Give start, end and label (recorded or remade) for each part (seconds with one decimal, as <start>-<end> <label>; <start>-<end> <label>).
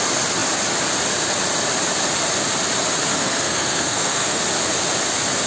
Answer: 0.0-3.1 recorded; 3.1-4.4 remade; 4.4-5.5 recorded